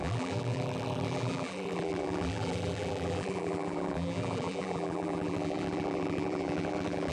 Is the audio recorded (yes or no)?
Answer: no